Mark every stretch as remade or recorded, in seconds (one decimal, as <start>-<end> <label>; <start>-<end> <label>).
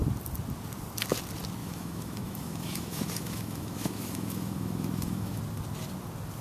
0.0-1.6 recorded; 1.6-5.4 remade; 5.4-6.4 recorded